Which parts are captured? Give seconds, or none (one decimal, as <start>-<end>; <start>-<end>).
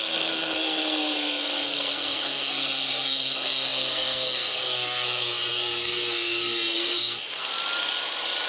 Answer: 7.5-8.5